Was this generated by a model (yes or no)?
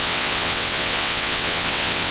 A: yes